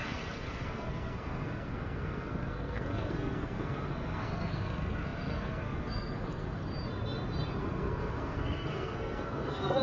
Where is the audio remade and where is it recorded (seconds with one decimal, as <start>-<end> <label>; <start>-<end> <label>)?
0.0-6.6 remade; 6.6-7.6 recorded; 7.6-9.8 remade

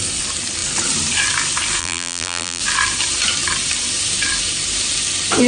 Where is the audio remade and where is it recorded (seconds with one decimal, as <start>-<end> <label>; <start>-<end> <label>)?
0.0-1.8 recorded; 1.8-2.6 remade; 2.6-5.5 recorded

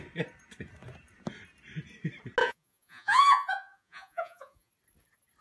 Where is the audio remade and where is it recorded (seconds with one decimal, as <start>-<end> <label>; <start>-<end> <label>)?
0.0-2.4 recorded; 2.4-4.7 remade; 4.7-5.4 recorded

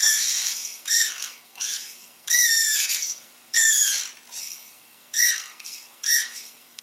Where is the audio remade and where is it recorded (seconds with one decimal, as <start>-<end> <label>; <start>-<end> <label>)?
0.0-3.9 remade; 3.9-4.4 recorded; 4.4-6.8 remade

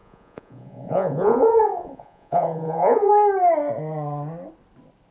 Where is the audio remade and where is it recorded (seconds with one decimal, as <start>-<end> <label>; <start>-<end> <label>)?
0.0-3.1 remade; 3.1-5.1 recorded

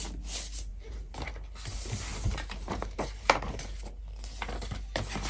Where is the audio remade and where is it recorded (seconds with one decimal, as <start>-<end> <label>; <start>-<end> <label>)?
0.0-0.7 recorded; 0.7-1.3 remade; 1.3-2.1 recorded; 2.1-4.0 remade; 4.0-5.3 recorded

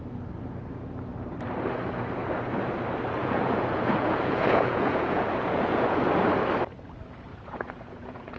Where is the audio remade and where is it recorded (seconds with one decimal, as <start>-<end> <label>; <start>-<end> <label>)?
0.0-3.2 recorded; 3.2-6.0 remade; 6.0-7.3 recorded; 7.3-8.4 remade